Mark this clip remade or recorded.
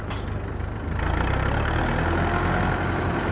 recorded